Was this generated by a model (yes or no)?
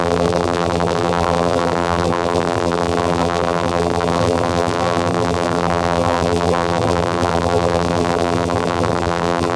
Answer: yes